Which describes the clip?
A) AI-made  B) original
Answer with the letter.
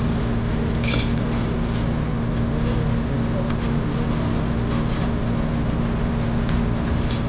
B